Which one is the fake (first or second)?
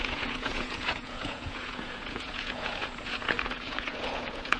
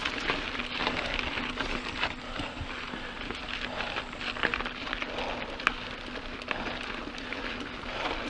first